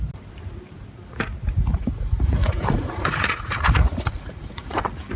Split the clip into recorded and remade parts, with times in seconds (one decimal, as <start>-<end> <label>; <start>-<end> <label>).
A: 0.0-1.7 recorded; 1.7-4.8 remade; 4.8-5.2 recorded